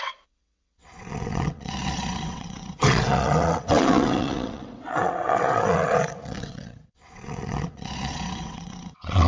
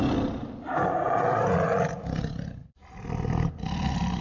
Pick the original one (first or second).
second